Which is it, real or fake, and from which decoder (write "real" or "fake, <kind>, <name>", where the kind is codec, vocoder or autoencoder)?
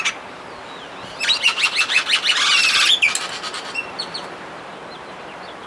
real